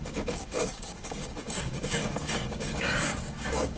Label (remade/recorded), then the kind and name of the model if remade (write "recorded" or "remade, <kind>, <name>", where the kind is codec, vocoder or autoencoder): remade, codec, DAC